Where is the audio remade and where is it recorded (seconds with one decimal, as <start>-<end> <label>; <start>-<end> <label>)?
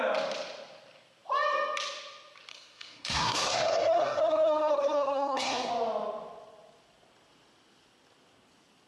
0.0-2.5 recorded; 2.5-5.7 remade; 5.7-8.9 recorded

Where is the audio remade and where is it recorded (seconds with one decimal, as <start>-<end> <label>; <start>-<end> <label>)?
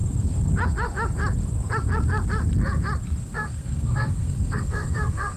0.0-3.2 recorded; 3.2-5.4 remade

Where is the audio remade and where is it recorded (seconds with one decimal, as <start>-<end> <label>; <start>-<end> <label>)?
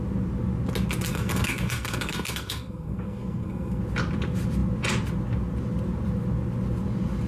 0.0-1.1 recorded; 1.1-3.8 remade; 3.8-7.3 recorded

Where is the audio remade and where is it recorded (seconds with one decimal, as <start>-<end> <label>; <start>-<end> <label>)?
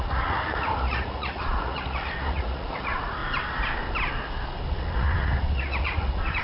0.0-3.2 remade; 3.2-4.7 recorded; 4.7-6.4 remade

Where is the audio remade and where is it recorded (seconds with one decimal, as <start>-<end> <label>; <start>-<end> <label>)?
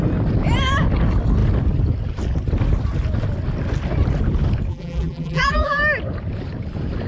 0.0-4.7 recorded; 4.7-5.8 remade; 5.8-7.1 recorded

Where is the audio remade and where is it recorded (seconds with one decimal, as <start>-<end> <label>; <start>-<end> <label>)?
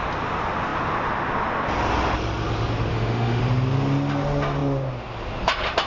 0.0-2.9 recorded; 2.9-3.4 remade; 3.4-5.9 recorded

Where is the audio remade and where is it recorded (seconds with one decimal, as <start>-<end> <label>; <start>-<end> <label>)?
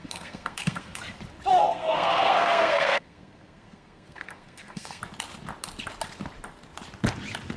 0.0-1.0 remade; 1.0-1.5 recorded; 1.5-5.0 remade; 5.0-7.6 recorded